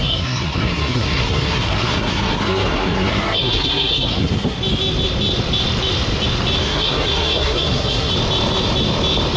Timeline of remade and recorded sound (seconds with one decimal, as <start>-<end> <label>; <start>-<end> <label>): 0.0-4.6 remade; 4.6-6.6 recorded; 6.6-8.1 remade; 8.1-9.4 recorded